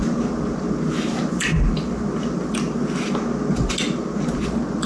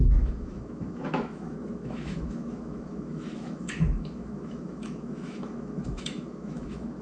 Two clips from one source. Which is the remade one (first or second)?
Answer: second